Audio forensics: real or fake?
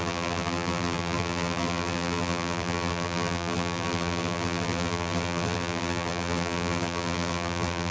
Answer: fake